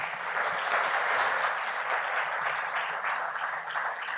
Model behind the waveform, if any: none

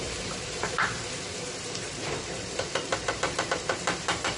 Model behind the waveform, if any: vocoder, BigVGAN v2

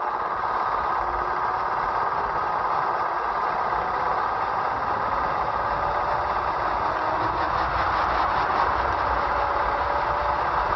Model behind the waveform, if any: none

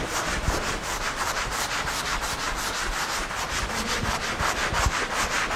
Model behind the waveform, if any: vocoder, BigVGAN v2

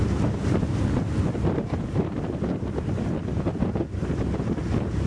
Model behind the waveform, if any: vocoder, BigVGAN v2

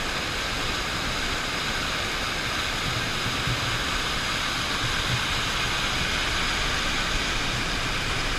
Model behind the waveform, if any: none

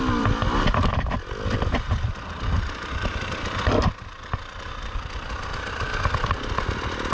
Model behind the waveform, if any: vocoder, BigVGAN v2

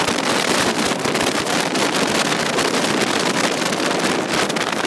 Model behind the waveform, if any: vocoder, BigVGAN v2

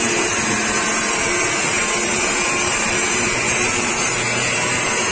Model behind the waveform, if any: vocoder, BigVGAN v2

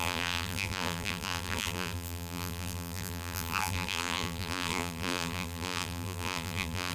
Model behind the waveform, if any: vocoder, BigVGAN v2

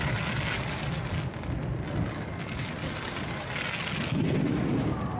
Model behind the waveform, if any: none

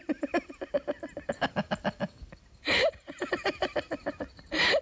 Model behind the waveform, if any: none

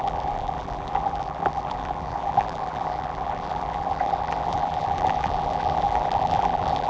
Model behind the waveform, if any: vocoder, BigVGAN v2